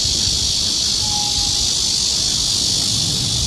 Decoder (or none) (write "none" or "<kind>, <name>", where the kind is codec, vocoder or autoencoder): none